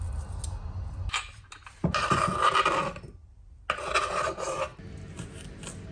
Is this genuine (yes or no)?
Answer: yes